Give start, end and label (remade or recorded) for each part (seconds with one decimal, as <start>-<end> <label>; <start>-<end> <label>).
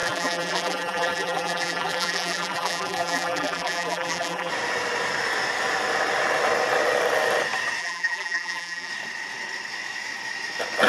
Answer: 0.0-4.5 remade; 4.5-7.8 recorded; 7.8-8.9 remade; 8.9-10.9 recorded